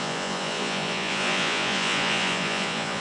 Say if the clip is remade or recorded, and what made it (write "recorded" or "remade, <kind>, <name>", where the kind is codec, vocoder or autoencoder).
remade, vocoder, Vocos